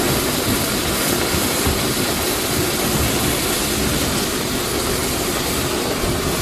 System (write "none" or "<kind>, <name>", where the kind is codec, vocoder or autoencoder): none